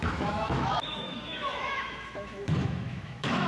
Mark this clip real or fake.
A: fake